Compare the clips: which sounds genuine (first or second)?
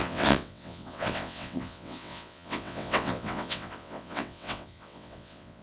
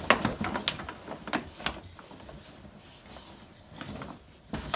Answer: second